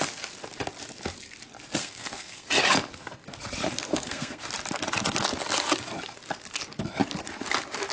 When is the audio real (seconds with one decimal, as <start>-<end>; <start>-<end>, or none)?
0.0-1.8; 2.5-3.9; 4.4-7.9